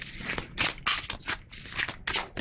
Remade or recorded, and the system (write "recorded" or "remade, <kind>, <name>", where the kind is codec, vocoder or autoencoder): recorded